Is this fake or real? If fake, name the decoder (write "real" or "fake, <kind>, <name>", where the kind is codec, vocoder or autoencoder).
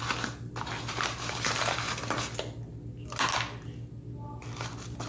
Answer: real